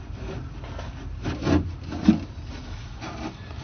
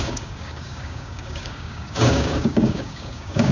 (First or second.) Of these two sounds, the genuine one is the first